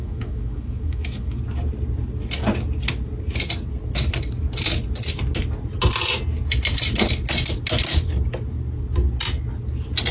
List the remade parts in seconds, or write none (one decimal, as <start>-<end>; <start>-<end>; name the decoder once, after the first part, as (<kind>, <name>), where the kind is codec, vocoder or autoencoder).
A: 0.0-1.4 (autoencoder, DAC-VAE)